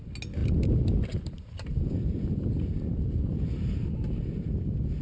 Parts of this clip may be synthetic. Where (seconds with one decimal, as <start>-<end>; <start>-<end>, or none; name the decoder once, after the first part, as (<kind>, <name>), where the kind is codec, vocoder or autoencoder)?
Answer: 0.4-3.4 (vocoder, BigVGAN v2)